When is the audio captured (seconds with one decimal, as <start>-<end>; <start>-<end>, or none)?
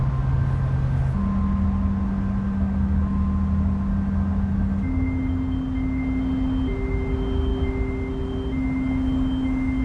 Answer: 0.0-9.8